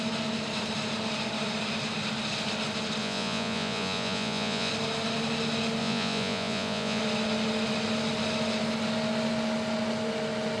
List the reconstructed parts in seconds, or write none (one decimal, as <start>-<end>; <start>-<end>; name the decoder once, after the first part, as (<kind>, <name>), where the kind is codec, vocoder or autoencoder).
3.0-4.7 (vocoder, Vocos); 5.8-7.0